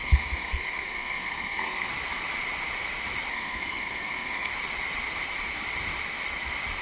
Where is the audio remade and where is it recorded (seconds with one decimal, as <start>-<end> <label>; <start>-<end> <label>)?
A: 0.0-1.9 remade; 1.9-3.3 recorded; 3.3-4.5 remade; 4.5-6.8 recorded